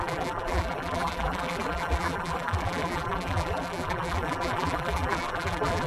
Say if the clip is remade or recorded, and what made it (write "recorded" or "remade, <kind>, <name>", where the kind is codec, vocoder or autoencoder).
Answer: remade, vocoder, BigVGAN v2